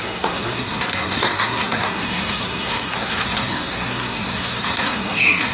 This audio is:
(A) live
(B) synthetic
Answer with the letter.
B